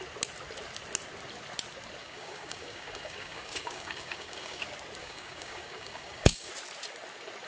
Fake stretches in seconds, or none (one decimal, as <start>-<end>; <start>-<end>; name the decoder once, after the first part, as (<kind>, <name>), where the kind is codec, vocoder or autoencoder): 2.0-4.6 (codec, DAC); 5.0-6.5